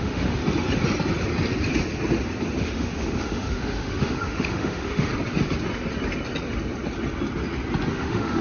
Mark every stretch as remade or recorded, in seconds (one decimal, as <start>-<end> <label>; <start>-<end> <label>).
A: 0.0-0.4 remade; 0.4-2.6 recorded; 2.6-5.1 remade; 5.1-7.9 recorded; 7.9-8.4 remade